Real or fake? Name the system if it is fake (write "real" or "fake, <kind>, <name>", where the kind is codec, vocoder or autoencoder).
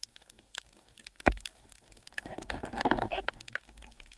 fake, codec, DAC